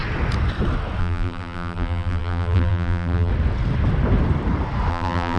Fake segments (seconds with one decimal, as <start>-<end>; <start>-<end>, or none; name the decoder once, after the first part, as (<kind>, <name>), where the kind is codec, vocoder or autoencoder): 1.0-3.3 (vocoder, BigVGAN v2); 4.9-5.4